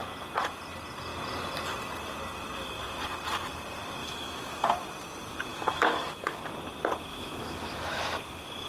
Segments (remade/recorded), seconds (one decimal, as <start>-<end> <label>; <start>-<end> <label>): 0.0-4.0 recorded; 4.0-4.7 remade; 4.7-5.5 recorded; 5.5-6.4 remade; 6.4-7.1 recorded; 7.1-8.0 remade; 8.0-8.7 recorded